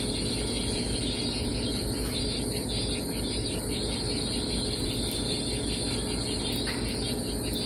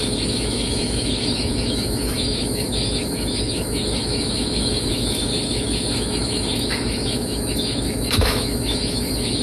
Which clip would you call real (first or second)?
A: first